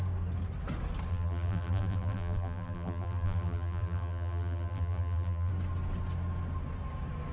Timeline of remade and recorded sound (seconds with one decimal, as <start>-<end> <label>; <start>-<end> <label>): 0.0-1.1 recorded; 1.1-5.5 remade; 5.5-7.3 recorded